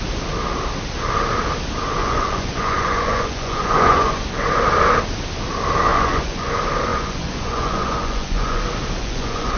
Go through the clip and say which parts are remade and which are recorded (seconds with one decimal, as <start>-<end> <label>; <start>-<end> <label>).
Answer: 0.0-2.0 recorded; 2.0-4.2 remade; 4.2-5.9 recorded; 5.9-6.5 remade; 6.5-6.9 recorded; 6.9-8.6 remade; 8.6-9.0 recorded; 9.0-9.6 remade